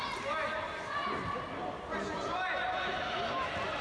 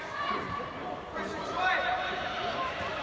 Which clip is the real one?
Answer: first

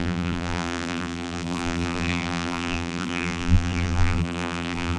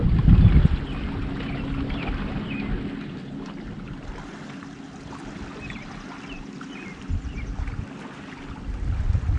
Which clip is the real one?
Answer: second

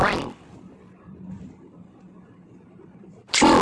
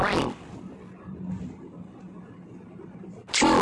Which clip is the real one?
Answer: second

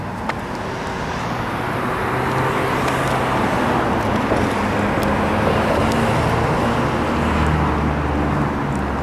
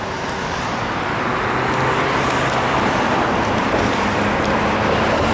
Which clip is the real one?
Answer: first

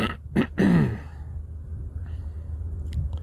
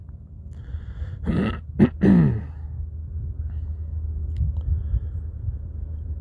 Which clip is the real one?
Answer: second